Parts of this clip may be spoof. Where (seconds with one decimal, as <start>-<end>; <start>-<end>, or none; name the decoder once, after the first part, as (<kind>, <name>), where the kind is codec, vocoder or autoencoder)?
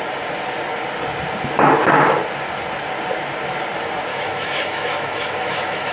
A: 4.1-5.9 (autoencoder, DAC-VAE)